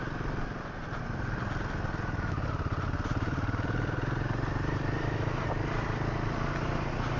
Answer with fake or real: real